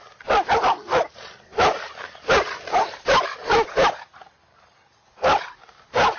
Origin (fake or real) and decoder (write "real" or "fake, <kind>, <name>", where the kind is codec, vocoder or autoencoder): real